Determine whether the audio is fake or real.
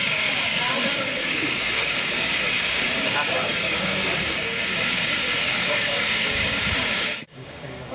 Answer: fake